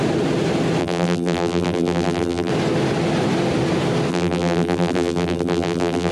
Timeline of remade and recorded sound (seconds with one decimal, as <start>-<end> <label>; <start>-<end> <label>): 0.0-0.8 recorded; 0.8-2.5 remade; 2.5-4.1 recorded; 4.1-6.1 remade